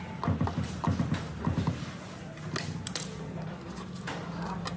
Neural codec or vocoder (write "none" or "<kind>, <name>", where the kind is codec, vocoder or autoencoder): none